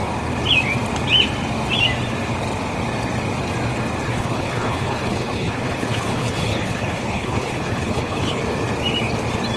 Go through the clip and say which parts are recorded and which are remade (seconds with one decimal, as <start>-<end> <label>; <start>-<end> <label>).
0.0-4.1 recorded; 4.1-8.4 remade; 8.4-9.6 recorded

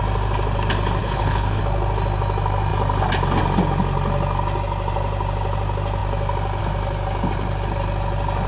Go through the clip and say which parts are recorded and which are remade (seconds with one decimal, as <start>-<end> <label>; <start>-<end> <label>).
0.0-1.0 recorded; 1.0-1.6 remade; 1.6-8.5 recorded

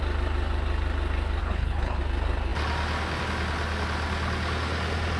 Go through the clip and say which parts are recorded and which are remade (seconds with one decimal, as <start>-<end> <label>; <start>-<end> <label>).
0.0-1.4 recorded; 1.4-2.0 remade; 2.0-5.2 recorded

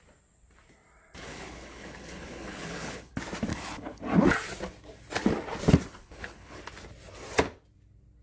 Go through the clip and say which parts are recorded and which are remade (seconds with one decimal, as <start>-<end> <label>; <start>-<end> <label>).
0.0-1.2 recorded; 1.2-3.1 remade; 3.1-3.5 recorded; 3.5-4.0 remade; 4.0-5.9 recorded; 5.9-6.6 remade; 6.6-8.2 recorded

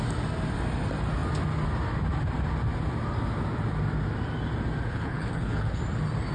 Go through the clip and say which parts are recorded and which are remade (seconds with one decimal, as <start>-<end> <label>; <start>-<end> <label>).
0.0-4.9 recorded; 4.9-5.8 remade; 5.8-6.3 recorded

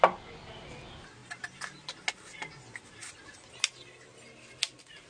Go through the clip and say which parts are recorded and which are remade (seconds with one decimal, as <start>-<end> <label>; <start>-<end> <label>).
0.0-5.1 recorded

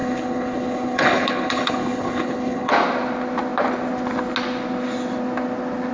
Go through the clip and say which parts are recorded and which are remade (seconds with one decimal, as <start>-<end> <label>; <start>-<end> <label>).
0.0-2.7 remade; 2.7-5.9 recorded